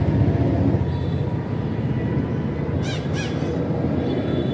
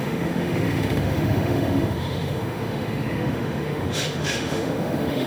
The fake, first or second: second